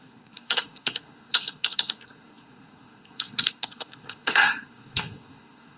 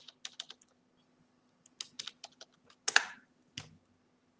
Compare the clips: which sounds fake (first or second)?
first